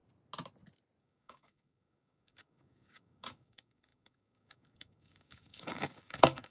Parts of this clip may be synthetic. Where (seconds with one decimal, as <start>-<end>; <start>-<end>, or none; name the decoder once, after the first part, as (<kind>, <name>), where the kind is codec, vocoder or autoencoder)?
1.0-6.5 (codec, DAC)

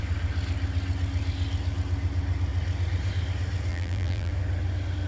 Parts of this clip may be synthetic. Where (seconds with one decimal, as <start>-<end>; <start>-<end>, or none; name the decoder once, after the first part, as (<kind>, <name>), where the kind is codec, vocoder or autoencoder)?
3.7-4.3 (vocoder, BigVGAN v2)

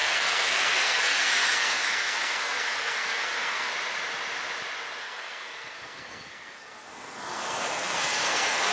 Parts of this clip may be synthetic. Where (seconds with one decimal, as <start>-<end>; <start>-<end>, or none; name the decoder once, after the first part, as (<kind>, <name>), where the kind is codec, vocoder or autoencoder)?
0.0-3.7 (codec, SNAC); 5.0-8.7

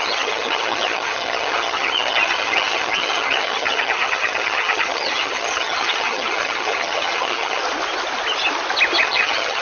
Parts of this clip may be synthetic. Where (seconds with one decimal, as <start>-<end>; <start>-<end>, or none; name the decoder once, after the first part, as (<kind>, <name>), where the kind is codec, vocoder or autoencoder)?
0.0-7.6 (vocoder, HiFi-GAN); 9.0-9.6

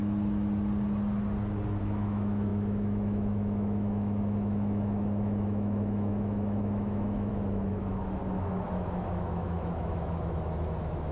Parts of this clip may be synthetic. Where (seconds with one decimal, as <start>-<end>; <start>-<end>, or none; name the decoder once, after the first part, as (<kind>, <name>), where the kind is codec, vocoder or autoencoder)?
1.8-8.2 (autoencoder, DAC-VAE); 8.7-11.1

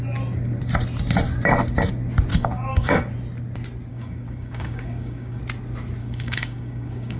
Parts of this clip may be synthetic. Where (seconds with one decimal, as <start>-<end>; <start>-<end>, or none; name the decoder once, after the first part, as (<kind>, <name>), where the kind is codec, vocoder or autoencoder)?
2.3-3.0 (codec, DAC); 3.9-5.4; 6.0-7.2

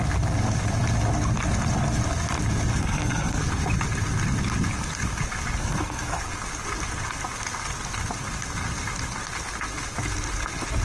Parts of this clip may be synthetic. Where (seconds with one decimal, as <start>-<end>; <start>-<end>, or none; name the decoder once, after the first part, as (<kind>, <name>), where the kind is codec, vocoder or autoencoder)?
2.7-3.4 (codec, SNAC); 5.6-6.2